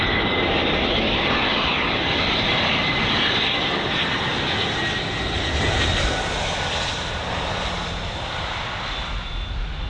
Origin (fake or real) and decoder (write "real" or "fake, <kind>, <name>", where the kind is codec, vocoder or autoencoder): real